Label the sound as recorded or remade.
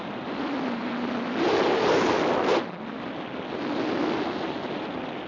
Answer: recorded